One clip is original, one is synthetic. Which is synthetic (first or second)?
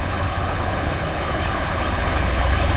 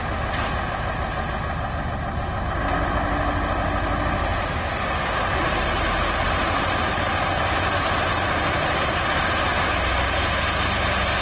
first